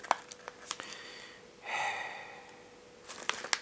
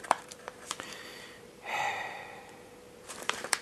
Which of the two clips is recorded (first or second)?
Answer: first